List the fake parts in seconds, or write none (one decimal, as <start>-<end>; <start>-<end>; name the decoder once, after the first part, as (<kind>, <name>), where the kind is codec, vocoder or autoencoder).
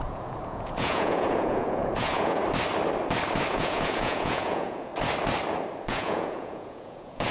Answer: 0.0-2.4 (vocoder, Vocos); 3.5-4.9; 5.9-7.3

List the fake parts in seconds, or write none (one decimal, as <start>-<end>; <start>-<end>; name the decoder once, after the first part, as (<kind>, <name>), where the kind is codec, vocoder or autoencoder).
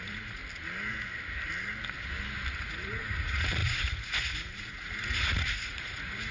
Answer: 0.0-0.4 (vocoder, Vocos); 2.6-6.3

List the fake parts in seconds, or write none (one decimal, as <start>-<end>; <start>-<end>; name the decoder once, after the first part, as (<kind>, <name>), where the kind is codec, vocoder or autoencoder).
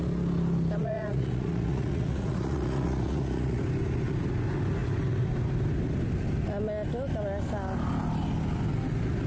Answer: 0.8-3.6 (vocoder, Vocos)